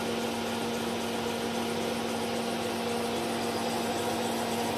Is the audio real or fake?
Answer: real